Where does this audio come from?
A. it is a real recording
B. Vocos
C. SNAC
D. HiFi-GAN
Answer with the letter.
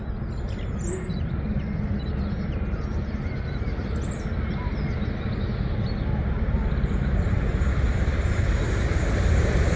A